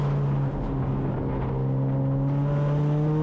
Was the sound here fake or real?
real